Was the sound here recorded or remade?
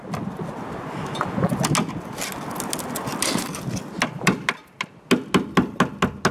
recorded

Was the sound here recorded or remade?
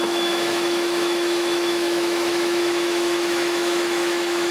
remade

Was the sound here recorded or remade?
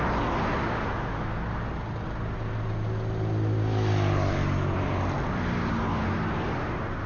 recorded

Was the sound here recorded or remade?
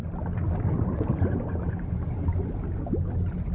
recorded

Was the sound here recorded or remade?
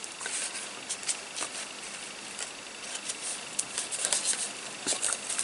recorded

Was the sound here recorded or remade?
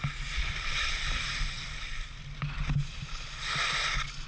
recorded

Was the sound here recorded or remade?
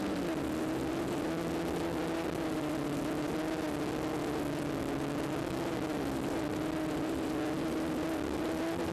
recorded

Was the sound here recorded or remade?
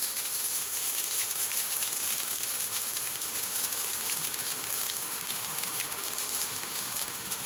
remade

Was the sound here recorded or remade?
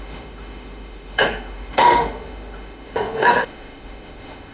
remade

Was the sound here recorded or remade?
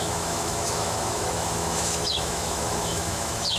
remade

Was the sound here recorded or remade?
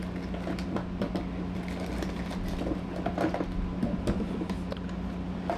recorded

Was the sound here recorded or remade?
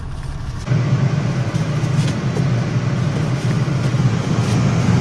recorded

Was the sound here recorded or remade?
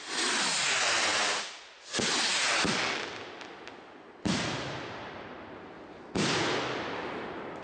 recorded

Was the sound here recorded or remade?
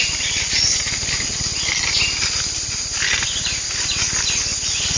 recorded